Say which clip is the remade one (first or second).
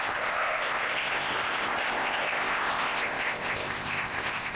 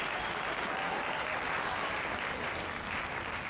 first